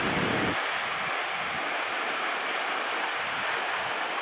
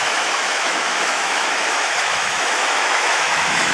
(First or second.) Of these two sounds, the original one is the first